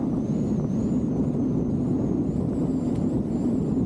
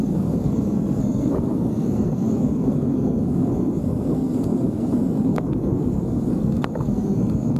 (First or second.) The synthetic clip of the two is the second